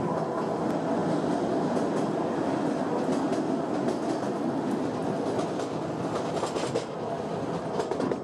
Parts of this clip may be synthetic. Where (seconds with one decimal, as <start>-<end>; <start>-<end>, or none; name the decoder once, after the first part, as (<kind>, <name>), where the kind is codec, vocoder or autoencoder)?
1.0-1.5 (vocoder, BigVGAN v2)